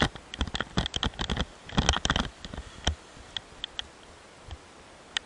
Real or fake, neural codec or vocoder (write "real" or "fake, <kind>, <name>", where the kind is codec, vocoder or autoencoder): real